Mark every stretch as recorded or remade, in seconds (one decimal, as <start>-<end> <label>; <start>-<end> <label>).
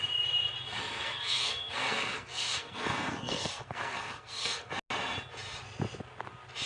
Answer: 0.0-0.8 recorded; 0.8-4.7 remade; 4.7-6.7 recorded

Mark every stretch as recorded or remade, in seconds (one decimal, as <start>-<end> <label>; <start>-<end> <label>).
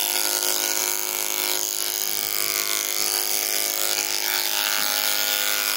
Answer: 0.0-5.8 recorded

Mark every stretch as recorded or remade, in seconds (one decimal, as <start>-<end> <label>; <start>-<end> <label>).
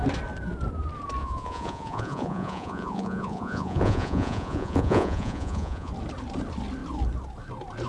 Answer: 0.0-1.2 recorded; 1.2-5.9 remade; 5.9-7.9 recorded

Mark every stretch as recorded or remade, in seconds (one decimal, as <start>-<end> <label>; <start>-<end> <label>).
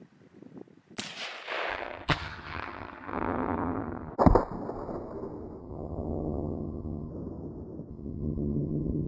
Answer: 0.0-1.7 recorded; 1.7-4.1 remade; 4.1-5.6 recorded; 5.6-7.1 remade; 7.1-7.9 recorded; 7.9-9.1 remade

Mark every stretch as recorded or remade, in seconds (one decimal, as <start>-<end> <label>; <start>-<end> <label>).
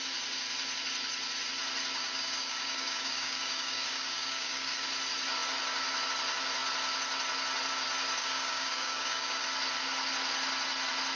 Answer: 0.0-2.0 recorded; 2.0-4.8 remade; 4.8-8.2 recorded; 8.2-9.4 remade; 9.4-11.2 recorded